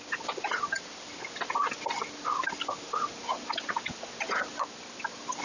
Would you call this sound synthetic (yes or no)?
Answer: no